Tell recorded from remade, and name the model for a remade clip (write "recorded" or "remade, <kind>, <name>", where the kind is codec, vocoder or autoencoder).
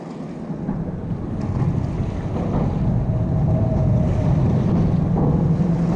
recorded